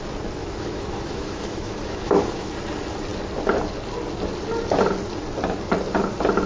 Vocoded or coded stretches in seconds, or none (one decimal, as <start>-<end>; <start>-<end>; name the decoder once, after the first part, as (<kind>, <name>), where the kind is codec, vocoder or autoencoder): 0.4-2.5 (autoencoder, DAC-VAE)